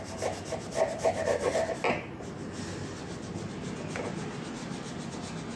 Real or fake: real